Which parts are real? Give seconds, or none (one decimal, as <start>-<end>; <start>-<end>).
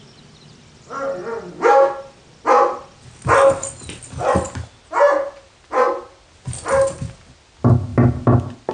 0.0-8.7